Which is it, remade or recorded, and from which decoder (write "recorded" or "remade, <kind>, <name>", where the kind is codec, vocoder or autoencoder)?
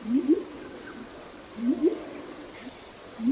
remade, vocoder, WaveNeXt